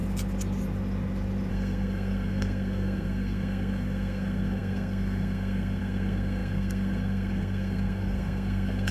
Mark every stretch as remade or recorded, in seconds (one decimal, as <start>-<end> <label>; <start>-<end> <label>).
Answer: 0.0-1.5 recorded; 1.5-8.9 remade